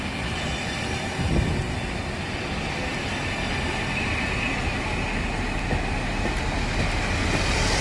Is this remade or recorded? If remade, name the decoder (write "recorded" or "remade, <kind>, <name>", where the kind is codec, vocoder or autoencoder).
recorded